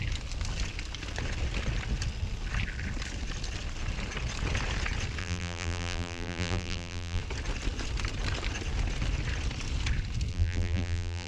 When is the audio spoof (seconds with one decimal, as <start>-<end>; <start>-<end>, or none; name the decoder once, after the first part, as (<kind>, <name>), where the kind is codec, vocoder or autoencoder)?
5.2-7.2 (vocoder, BigVGAN v2); 10.3-11.3